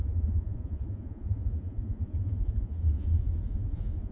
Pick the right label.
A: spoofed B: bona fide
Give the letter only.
A